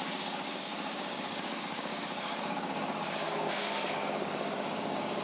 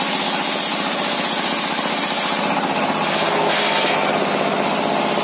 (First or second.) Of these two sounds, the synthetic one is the first